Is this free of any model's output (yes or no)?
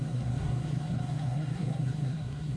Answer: no